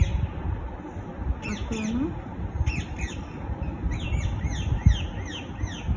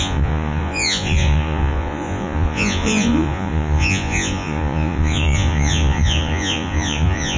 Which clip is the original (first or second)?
first